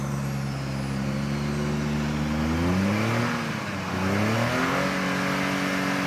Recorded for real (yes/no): yes